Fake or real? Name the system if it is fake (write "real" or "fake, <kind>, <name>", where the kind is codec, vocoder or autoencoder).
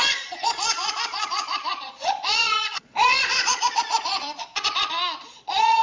fake, vocoder, Vocos